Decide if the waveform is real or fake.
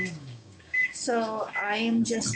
fake